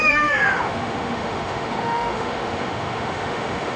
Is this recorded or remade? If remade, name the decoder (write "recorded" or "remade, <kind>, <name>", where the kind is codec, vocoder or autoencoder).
remade, autoencoder, DAC-VAE